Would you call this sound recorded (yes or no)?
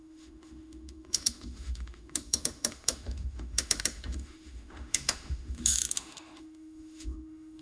no